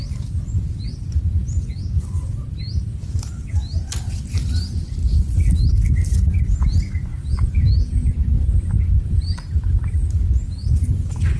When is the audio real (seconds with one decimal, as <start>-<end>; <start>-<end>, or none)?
0.0-7.1; 8.1-11.4